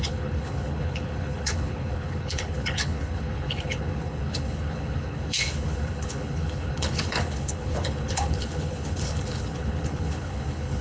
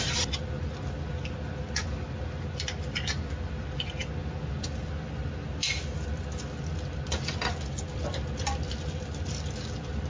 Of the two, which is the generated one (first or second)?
first